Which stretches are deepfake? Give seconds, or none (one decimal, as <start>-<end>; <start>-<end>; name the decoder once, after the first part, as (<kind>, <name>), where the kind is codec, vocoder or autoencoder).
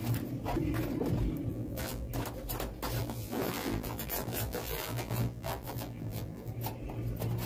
1.5-2.1 (vocoder, BigVGAN v2); 3.0-6.5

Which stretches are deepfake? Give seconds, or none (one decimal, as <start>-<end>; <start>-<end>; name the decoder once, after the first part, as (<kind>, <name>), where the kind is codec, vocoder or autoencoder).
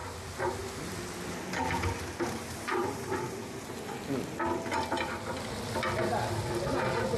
2.8-3.8 (vocoder, BigVGAN v2)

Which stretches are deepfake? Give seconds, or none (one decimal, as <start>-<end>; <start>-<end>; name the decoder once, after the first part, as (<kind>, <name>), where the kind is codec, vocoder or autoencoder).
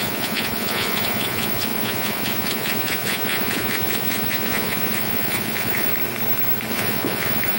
0.0-5.9 (vocoder, Vocos); 6.7-7.6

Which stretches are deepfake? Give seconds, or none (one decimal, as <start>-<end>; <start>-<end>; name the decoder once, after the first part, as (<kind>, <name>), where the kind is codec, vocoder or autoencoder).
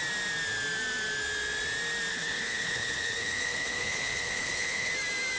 2.1-4.9 (codec, HILCodec)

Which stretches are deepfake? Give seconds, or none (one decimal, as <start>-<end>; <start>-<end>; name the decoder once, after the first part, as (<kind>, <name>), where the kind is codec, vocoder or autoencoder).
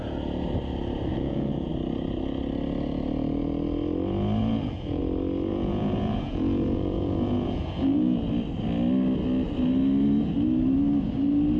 1.1-1.7 (vocoder, Vocos); 4.4-5.0; 5.5-8.3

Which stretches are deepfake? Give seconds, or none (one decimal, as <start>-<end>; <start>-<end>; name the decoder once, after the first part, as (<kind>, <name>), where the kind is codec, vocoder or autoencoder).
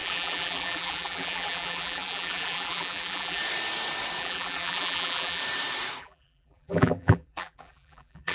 0.0-3.4 (vocoder, BigVGAN v2); 4.2-5.4; 6.0-8.3